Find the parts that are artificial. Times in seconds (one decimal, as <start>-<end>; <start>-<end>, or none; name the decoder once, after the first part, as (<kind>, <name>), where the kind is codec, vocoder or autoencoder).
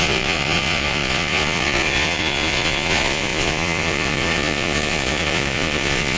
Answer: 0.0-6.2 (vocoder, Vocos)